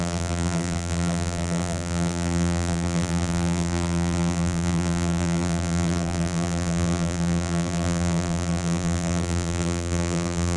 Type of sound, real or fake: fake